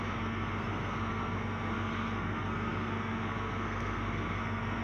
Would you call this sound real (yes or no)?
no